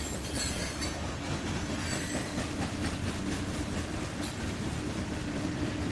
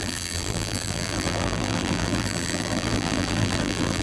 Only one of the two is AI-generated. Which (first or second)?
second